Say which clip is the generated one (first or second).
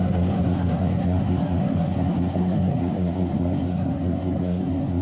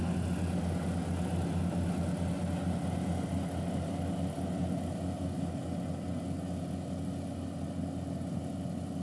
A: first